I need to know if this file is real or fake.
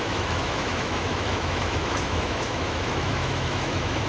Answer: fake